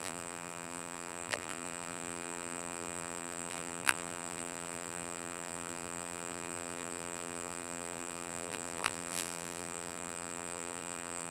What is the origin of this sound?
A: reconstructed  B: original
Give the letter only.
A